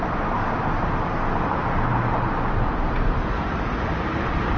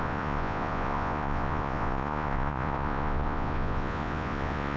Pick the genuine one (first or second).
first